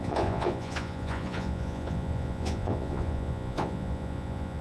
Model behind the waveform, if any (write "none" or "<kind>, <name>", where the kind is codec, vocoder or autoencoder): vocoder, Vocos